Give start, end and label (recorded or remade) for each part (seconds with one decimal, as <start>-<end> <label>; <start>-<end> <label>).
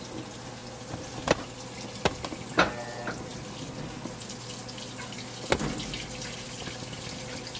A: 0.0-7.6 recorded